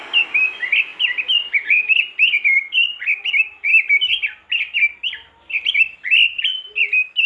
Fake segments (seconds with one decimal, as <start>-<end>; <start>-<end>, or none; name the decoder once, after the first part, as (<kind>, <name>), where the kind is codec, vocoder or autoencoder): none